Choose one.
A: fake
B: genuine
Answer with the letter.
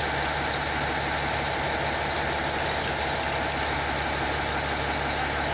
B